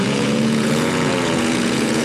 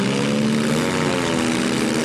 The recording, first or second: second